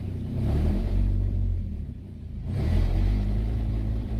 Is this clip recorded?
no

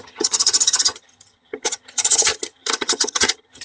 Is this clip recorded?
no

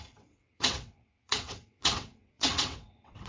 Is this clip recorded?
no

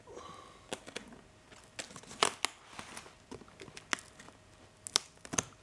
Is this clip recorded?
yes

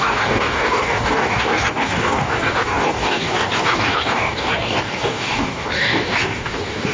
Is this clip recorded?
no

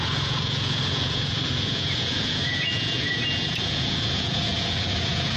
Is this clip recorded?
no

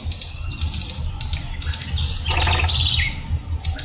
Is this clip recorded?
yes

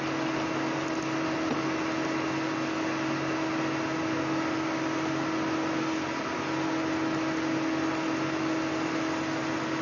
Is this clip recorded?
yes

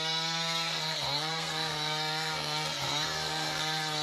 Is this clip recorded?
no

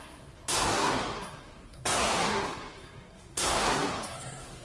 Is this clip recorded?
no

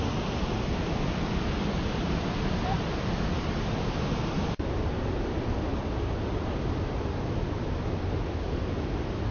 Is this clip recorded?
yes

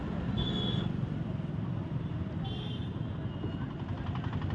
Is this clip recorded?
yes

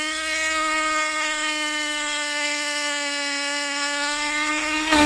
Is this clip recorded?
no